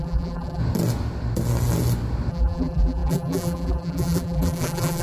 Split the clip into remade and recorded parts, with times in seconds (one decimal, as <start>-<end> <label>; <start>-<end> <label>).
0.0-0.6 remade; 0.6-2.3 recorded; 2.3-5.0 remade